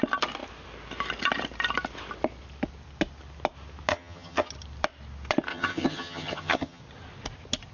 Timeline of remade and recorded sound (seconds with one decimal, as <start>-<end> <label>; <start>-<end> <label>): 0.0-3.9 recorded; 3.9-4.5 remade; 4.5-5.5 recorded; 5.5-6.8 remade; 6.8-7.7 recorded